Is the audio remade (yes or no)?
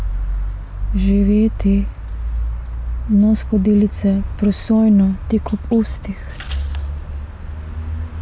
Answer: no